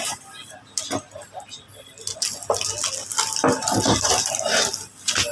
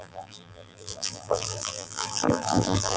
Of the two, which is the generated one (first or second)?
second